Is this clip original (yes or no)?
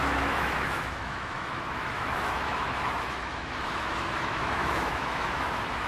no